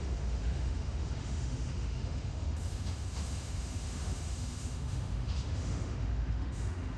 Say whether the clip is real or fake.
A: fake